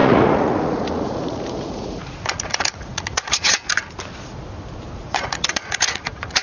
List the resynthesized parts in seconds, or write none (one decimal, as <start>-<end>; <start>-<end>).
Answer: 0.0-3.7; 5.0-6.4

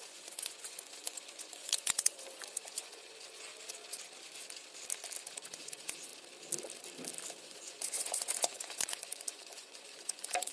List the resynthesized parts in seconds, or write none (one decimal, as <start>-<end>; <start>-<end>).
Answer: 0.0-3.5; 5.2-6.1; 7.4-10.5

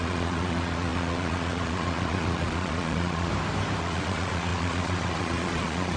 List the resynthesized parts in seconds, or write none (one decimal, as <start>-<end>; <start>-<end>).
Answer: 0.0-3.3; 3.8-6.0

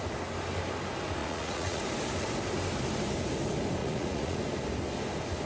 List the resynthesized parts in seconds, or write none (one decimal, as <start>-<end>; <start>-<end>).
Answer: 1.2-1.8; 3.8-4.4